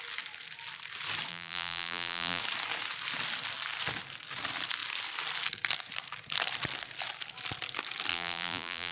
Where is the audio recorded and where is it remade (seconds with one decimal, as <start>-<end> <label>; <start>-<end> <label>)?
0.0-1.3 recorded; 1.3-2.4 remade; 2.4-8.1 recorded; 8.1-8.9 remade